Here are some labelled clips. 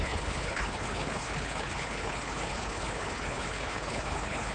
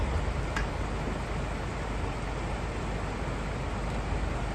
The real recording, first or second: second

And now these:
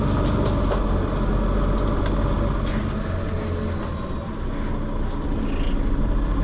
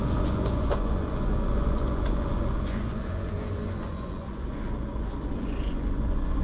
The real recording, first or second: first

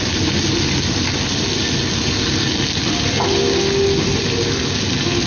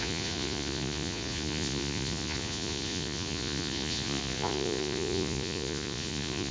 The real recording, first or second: first